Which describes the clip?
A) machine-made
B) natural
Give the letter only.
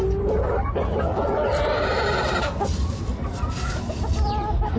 B